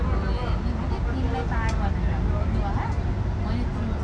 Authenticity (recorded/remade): recorded